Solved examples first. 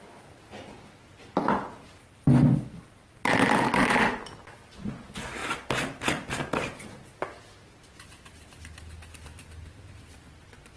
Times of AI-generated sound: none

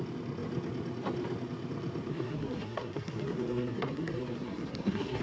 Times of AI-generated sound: 2.1-5.2 (codec, SNAC)

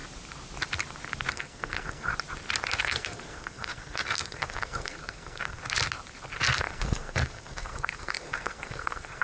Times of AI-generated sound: 1.3-2.1 (codec, SNAC); 2.8-5.6; 6.4-9.2

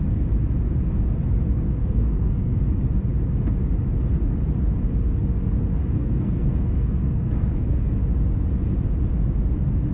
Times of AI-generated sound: 1.8-2.6 (codec, SNAC); 5.8-7.9

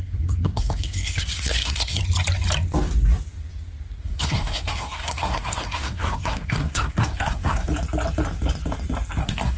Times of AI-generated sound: 0.0-2.0 (codec, SNAC); 4.0-7.7; 9.2-9.6

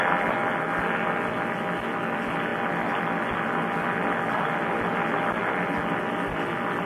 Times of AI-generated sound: none

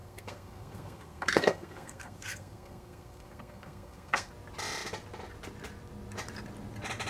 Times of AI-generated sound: 0.0-4.3 (codec, SNAC)

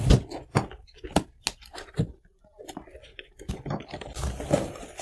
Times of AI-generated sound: none